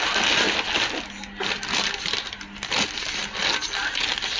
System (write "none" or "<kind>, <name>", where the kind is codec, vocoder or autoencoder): none